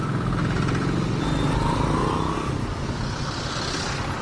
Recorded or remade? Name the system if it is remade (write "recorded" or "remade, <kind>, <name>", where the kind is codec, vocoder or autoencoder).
recorded